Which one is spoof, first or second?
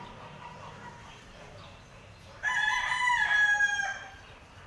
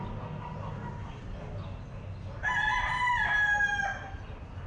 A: first